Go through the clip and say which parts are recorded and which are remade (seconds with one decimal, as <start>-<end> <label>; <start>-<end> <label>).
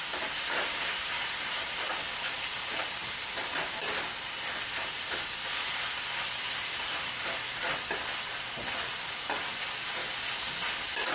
0.0-11.1 recorded